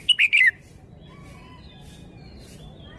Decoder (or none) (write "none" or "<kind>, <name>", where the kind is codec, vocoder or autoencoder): none